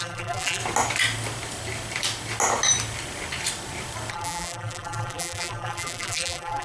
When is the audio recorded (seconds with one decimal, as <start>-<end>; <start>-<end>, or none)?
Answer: 0.6-4.1